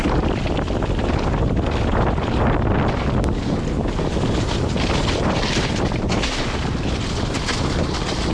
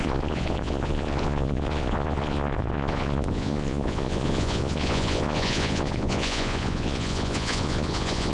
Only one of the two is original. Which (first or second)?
first